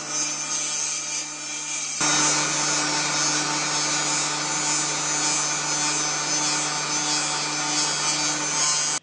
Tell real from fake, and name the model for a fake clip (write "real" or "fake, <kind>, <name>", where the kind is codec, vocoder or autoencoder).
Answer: real